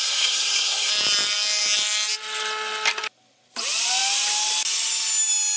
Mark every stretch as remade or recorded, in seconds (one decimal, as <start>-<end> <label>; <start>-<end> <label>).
0.0-0.9 remade; 0.9-5.6 recorded